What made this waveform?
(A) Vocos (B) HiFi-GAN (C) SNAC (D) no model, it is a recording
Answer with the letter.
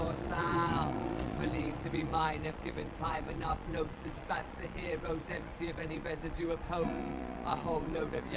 A